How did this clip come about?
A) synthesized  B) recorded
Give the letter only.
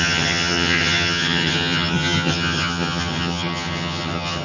A